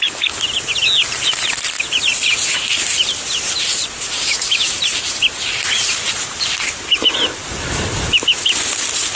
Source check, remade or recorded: recorded